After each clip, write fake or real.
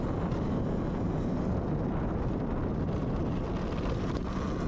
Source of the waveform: real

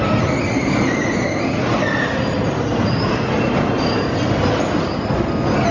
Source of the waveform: real